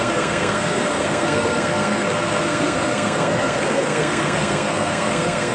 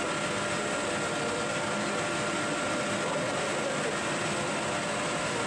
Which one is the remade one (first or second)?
first